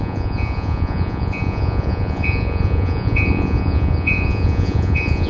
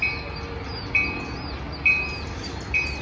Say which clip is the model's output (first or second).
first